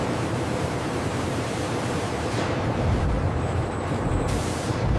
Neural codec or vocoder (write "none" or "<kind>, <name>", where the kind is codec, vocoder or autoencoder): vocoder, BigVGAN v2